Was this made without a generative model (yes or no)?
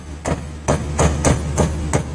yes